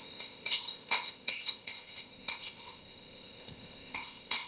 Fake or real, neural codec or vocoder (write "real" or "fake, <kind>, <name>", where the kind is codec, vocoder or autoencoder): fake, codec, ZipCodec